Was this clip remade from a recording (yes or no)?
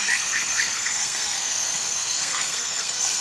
yes